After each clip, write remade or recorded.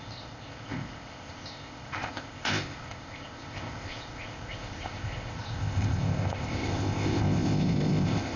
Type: remade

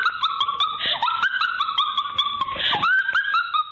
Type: recorded